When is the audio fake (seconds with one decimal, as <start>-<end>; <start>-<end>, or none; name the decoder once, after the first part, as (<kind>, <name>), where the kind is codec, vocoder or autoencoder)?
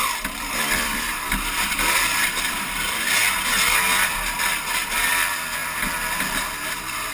0.0-3.2 (vocoder, BigVGAN v2)